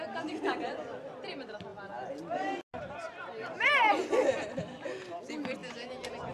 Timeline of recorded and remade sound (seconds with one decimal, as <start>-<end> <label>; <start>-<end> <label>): 0.0-6.3 recorded

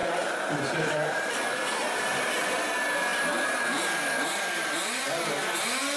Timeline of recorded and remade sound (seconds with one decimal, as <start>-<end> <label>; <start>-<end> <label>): 0.0-1.3 remade; 1.3-1.8 recorded; 1.8-2.7 remade; 2.7-6.0 recorded

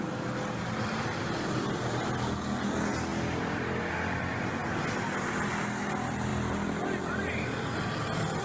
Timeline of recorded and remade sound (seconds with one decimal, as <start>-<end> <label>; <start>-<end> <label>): 0.0-8.4 recorded

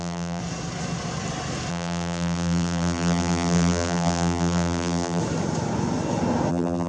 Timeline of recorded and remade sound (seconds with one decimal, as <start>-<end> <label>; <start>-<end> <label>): 0.0-0.4 remade; 0.4-1.7 recorded; 1.7-5.2 remade; 5.2-6.5 recorded; 6.5-6.9 remade